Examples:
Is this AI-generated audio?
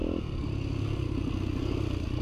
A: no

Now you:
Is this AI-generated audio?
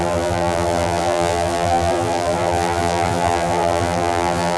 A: yes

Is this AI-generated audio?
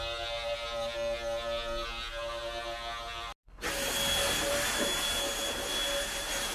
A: no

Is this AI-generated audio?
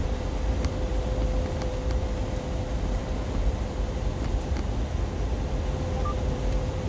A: yes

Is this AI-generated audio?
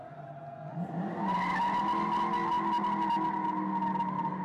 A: no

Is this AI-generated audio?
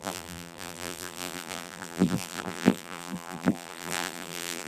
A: yes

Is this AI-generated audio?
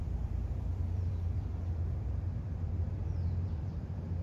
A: yes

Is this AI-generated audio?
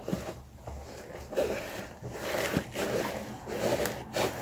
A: no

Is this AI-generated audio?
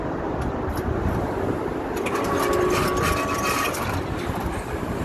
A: yes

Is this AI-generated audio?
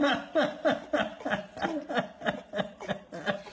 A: yes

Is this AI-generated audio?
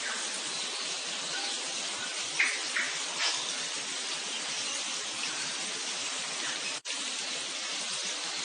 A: no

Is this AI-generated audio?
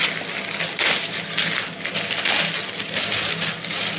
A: no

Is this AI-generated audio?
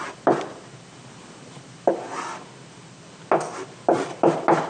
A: no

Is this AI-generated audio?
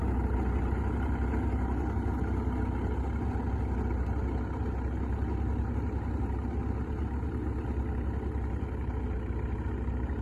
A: no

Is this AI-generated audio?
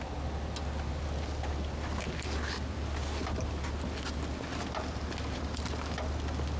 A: no